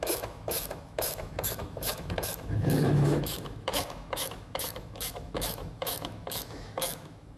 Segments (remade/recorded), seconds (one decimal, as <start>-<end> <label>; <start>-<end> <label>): 0.0-7.4 remade